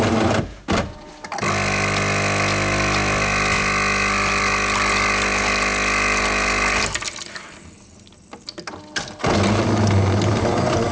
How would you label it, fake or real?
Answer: real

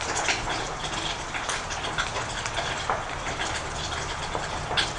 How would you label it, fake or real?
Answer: real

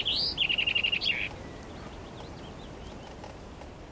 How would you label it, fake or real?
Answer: real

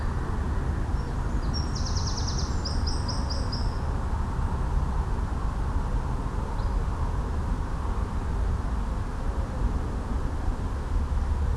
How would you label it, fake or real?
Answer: real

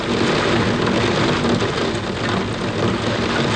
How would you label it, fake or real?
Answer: real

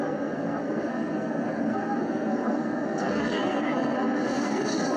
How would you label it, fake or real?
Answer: fake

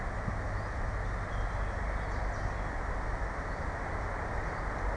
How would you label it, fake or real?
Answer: real